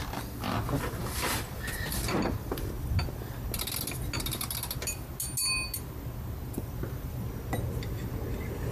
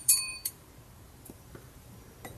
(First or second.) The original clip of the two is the first